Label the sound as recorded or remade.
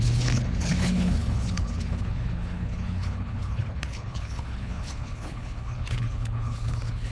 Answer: remade